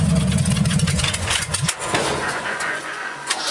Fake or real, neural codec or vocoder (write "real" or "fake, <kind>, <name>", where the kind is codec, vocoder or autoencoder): fake, vocoder, Vocos